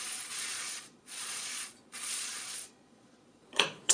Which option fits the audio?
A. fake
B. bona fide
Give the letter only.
A